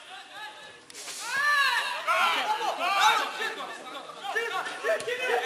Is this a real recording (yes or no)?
yes